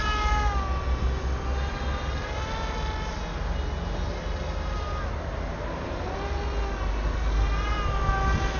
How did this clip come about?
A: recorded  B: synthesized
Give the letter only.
A